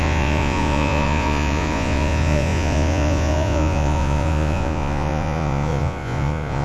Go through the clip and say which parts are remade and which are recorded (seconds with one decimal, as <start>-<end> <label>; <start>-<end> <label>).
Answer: 0.0-6.6 remade